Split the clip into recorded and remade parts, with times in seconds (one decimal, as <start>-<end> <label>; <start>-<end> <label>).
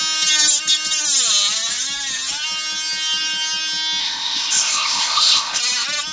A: 0.0-4.0 recorded; 4.0-5.6 remade; 5.6-6.1 recorded